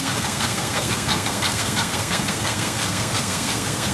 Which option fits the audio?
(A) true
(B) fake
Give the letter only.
B